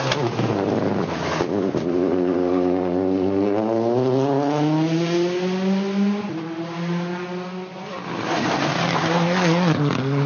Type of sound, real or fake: real